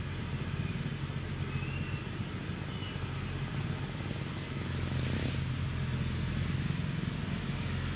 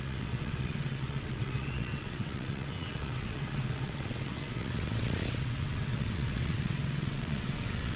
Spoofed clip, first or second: second